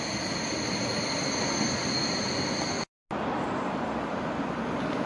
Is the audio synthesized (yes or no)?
no